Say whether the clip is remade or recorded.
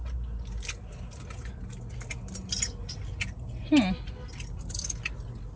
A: recorded